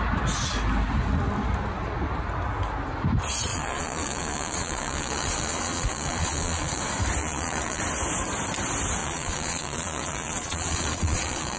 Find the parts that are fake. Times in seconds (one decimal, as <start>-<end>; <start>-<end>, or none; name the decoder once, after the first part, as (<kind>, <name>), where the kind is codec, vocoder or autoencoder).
3.5-6.8 (vocoder, Vocos); 7.2-7.8; 9.0-11.6